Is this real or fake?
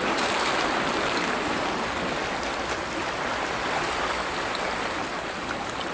real